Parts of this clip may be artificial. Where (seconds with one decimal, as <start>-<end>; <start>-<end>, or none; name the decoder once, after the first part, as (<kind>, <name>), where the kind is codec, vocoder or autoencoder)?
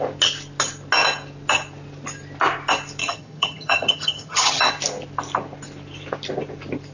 3.0-4.7 (vocoder, HiFi-GAN)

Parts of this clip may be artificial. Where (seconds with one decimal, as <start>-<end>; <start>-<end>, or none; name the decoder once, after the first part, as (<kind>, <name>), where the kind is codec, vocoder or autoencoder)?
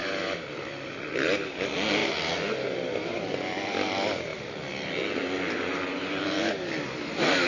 0.0-0.9 (vocoder, BigVGAN v2); 4.3-4.9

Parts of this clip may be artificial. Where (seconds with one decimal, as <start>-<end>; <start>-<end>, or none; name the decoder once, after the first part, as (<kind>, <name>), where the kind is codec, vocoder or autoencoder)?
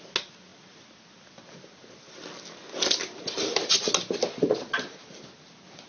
none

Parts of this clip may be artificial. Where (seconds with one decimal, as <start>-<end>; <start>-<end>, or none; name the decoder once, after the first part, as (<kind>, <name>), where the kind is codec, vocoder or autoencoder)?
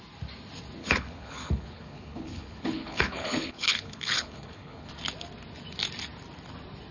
0.8-4.9 (codec, HILCodec)